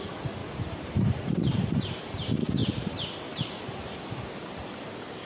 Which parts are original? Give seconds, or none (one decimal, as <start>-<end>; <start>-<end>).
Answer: 0.0-0.4; 1.3-5.2

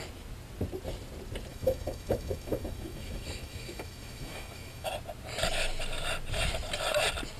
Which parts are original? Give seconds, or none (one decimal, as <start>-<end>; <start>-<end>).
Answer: 0.0-1.5; 4.9-7.4

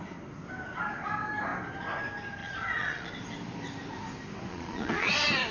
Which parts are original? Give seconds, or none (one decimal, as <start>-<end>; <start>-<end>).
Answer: 0.0-2.4; 3.1-4.5; 5.1-5.5